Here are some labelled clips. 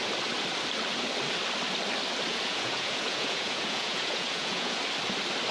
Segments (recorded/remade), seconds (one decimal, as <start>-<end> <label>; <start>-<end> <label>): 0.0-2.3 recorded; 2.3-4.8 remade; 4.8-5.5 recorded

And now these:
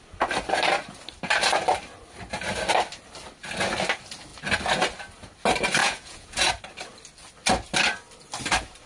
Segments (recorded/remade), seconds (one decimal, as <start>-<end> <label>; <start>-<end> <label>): 0.0-5.8 recorded; 5.8-6.5 remade; 6.5-8.9 recorded

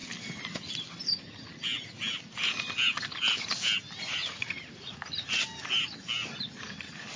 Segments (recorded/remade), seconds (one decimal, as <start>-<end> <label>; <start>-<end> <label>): 0.0-4.2 recorded; 4.2-5.1 remade; 5.1-7.2 recorded

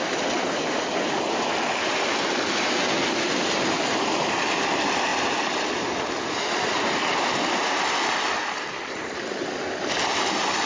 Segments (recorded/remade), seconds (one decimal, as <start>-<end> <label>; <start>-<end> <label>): 0.0-10.7 recorded

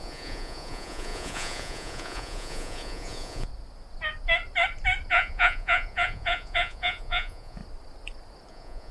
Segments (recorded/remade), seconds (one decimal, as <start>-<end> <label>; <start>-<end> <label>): 0.0-3.5 remade; 3.5-5.1 recorded; 5.1-7.6 remade; 7.6-8.5 recorded; 8.5-8.9 remade